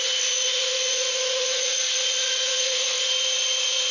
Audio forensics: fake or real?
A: fake